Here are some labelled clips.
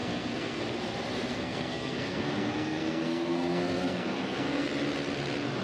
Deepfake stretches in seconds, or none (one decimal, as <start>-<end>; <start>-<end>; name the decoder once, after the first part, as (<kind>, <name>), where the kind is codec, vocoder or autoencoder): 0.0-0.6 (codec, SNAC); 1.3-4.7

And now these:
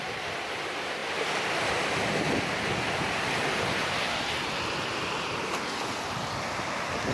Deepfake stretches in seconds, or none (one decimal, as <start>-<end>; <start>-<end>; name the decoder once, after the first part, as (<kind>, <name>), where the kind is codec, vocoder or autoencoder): 1.0-2.2 (vocoder, BigVGAN v2)

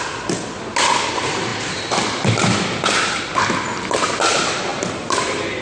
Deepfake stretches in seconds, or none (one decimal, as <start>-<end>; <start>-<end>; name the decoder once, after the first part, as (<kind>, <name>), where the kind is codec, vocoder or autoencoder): none